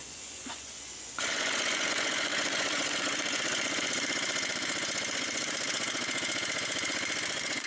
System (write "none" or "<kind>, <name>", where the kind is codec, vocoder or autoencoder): vocoder, Vocos